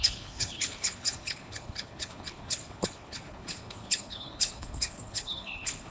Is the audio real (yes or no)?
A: no